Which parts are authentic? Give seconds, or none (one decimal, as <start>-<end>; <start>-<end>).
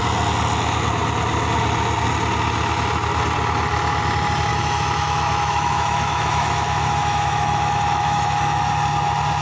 0.0-4.5; 8.6-9.4